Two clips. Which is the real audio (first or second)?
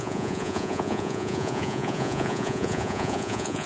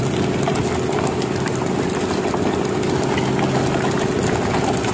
second